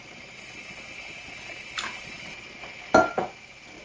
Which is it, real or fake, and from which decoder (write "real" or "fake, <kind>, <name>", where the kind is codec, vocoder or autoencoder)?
real